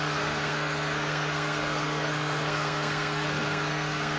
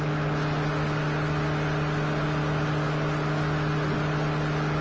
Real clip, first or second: second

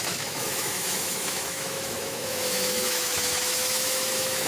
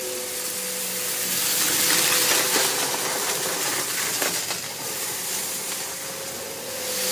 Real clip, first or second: second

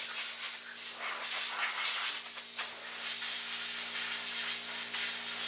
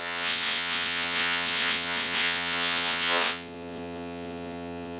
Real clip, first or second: first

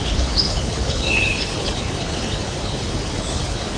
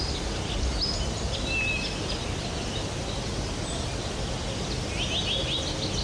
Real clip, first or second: second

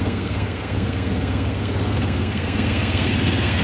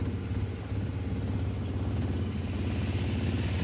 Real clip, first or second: second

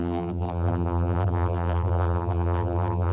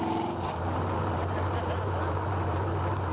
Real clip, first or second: second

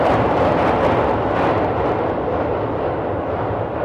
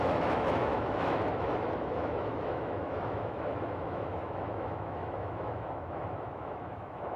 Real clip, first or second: first